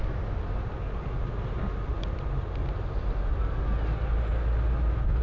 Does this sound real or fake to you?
real